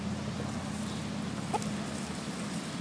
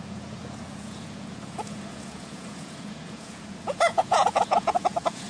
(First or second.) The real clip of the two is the first